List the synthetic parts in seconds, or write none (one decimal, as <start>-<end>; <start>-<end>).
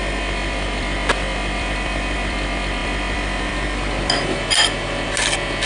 none